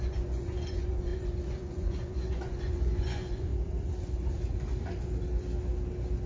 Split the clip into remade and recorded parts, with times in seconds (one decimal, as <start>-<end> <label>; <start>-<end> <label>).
0.0-3.5 remade; 3.5-6.3 recorded